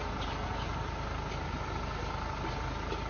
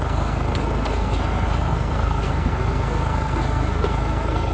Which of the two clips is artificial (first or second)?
second